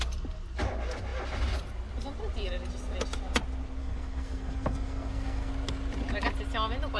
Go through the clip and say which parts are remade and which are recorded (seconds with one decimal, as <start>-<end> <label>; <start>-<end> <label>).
0.0-3.8 recorded; 3.8-5.5 remade; 5.5-7.0 recorded